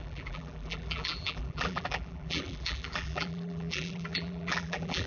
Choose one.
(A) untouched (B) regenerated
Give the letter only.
B